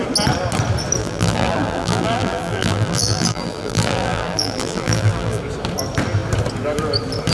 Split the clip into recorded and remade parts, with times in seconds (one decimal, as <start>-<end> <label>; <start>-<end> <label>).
0.0-1.0 recorded; 1.0-5.4 remade; 5.4-7.3 recorded